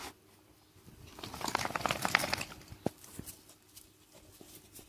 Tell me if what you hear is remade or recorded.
recorded